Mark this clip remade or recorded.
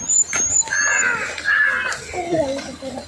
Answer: recorded